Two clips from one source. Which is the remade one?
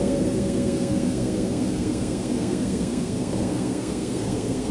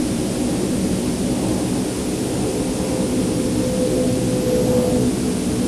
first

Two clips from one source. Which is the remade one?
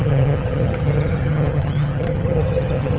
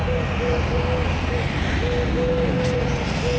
first